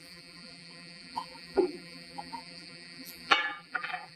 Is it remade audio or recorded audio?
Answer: remade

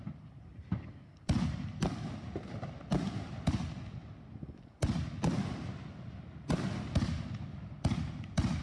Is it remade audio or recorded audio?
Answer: recorded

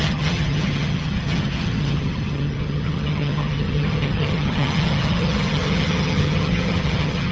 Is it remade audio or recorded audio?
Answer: remade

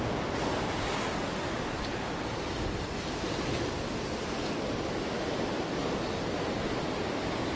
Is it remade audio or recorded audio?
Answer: recorded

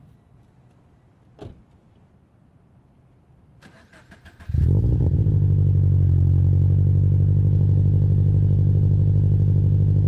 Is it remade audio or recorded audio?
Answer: recorded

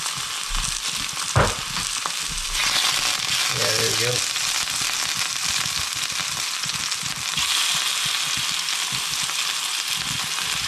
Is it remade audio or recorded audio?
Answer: recorded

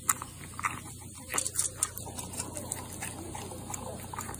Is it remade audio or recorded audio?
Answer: recorded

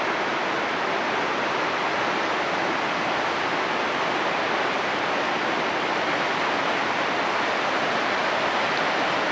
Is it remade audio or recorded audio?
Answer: recorded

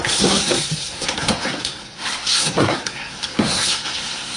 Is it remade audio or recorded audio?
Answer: remade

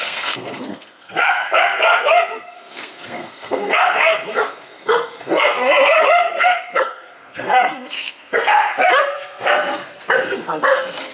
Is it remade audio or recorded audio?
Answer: remade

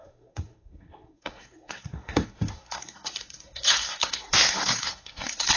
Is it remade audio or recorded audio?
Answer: remade